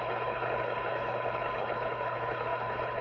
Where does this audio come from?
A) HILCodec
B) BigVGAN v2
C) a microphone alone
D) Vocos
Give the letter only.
A